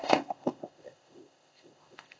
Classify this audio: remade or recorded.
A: remade